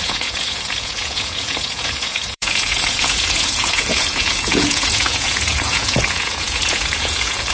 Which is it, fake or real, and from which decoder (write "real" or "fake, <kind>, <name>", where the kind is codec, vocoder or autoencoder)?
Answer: fake, vocoder, Vocos